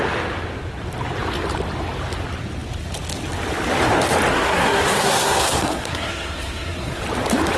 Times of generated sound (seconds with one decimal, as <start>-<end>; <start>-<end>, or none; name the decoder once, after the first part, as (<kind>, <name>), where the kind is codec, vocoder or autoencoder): 4.3-7.0 (codec, SNAC)